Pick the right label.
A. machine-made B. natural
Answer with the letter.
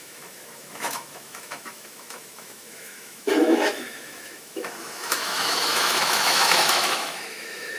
A